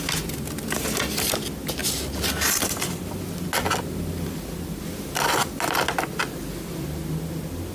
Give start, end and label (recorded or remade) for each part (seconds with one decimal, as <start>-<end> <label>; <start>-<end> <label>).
0.0-7.7 recorded